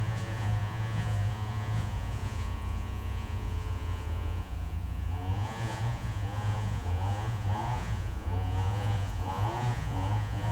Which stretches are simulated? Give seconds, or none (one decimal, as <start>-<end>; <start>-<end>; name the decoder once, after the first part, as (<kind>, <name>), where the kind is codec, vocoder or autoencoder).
0.0-10.5 (vocoder, Vocos)